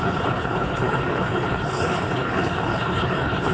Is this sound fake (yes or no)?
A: yes